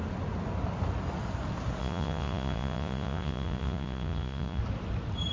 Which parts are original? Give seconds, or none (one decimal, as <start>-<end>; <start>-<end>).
0.0-1.8; 4.6-5.3